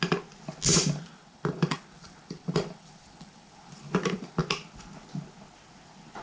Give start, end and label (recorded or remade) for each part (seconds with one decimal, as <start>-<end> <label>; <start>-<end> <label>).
0.0-0.7 recorded; 0.7-4.4 remade; 4.4-6.2 recorded